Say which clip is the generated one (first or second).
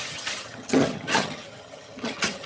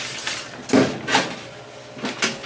first